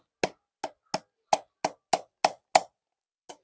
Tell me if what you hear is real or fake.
real